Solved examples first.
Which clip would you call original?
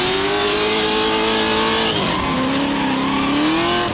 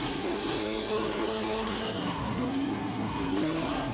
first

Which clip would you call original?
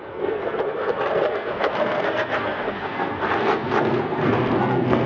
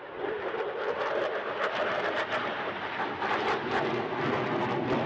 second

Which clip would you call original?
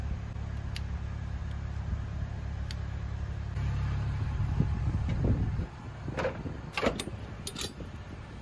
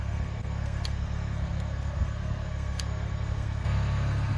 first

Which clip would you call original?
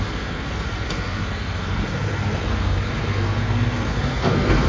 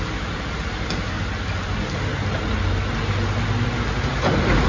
second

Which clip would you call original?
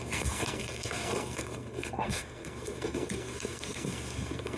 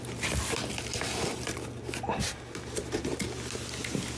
second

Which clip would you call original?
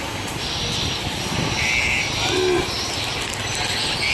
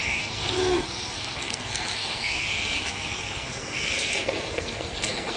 first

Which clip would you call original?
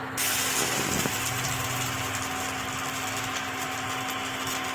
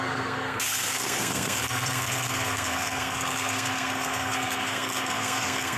first